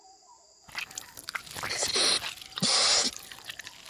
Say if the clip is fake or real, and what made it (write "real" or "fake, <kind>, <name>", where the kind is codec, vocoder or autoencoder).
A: real